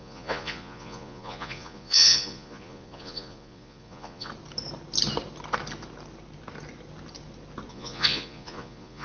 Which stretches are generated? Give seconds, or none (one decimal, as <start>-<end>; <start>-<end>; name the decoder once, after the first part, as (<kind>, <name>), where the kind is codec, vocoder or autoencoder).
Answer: 0.0-4.3 (vocoder, Vocos); 7.7-9.0